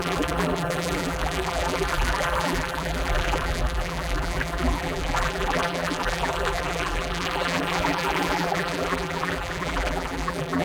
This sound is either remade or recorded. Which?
remade